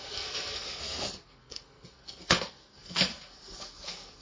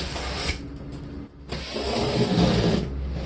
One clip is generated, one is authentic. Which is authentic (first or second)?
second